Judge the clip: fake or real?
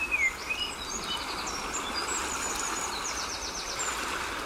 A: real